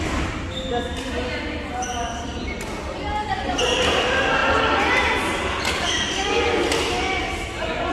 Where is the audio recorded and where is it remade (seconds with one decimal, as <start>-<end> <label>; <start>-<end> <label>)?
0.0-7.9 recorded